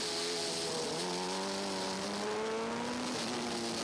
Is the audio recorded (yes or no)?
yes